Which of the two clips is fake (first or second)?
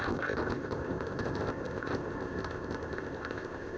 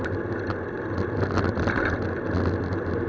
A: first